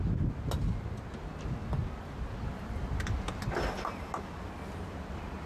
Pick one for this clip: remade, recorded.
recorded